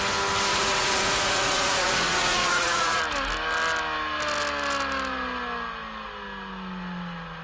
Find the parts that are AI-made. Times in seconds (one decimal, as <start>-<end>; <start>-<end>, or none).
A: 0.5-3.0